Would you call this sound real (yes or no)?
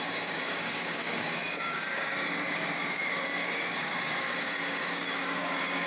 no